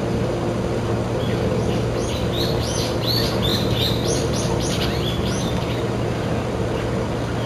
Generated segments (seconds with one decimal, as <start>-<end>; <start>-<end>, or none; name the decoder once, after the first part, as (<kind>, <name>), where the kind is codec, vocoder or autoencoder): none